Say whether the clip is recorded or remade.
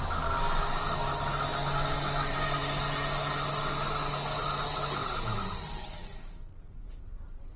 recorded